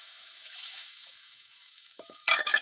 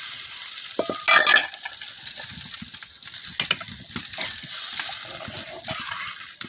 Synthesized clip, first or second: first